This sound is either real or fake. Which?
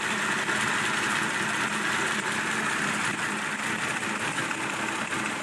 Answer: real